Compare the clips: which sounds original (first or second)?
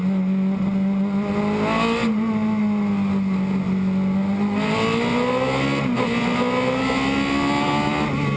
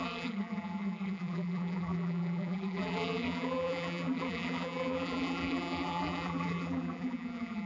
first